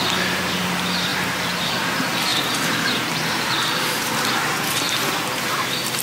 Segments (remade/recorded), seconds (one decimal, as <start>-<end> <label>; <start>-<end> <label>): 0.0-6.0 recorded